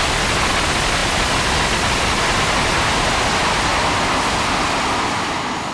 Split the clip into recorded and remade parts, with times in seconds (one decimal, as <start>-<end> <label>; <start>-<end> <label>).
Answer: 0.0-5.7 recorded